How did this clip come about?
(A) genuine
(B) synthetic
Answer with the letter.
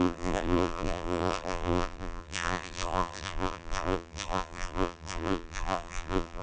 B